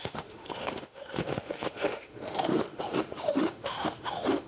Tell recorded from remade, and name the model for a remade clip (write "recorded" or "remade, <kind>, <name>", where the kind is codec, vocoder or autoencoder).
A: remade, autoencoder, DAC-VAE